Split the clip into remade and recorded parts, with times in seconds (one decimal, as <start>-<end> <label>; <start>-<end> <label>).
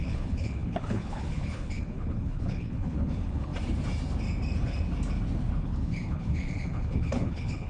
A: 0.0-3.5 remade; 3.5-5.6 recorded; 5.6-7.7 remade